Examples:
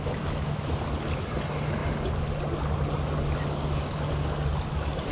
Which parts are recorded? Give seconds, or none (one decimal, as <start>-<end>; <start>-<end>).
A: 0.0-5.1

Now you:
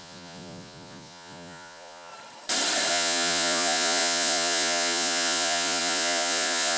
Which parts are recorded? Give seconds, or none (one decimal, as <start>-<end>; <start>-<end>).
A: 2.1-2.9

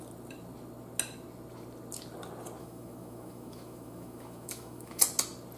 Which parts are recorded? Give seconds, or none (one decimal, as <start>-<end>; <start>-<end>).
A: 0.0-2.6; 5.0-5.6